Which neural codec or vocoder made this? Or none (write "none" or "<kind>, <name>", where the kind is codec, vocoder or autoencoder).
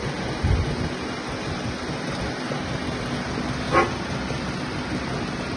none